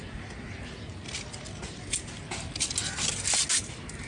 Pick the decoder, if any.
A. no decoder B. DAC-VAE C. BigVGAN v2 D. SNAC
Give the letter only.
A